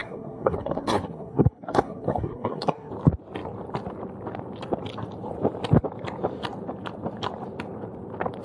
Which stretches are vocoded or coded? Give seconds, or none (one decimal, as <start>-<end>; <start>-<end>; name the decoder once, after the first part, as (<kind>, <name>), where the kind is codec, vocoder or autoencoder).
0.0-2.9 (codec, SNAC)